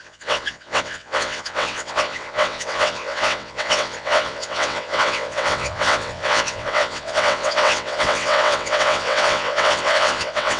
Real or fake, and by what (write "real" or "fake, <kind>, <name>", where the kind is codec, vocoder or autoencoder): fake, vocoder, WaveNeXt